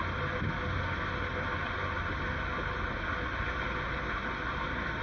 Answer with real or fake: real